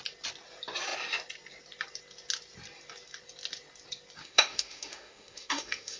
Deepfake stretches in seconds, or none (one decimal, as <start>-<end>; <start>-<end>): 4.2-6.0